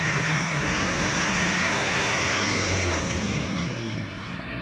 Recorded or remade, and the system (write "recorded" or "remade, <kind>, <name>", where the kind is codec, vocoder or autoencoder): remade, codec, SNAC